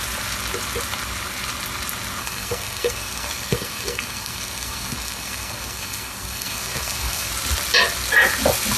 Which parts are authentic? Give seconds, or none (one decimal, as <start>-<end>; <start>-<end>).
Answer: 0.0-2.2; 7.3-8.8